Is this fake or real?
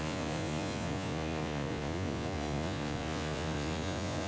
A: fake